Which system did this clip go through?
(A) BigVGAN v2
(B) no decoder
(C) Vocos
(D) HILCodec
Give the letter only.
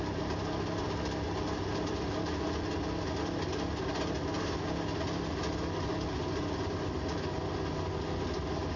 B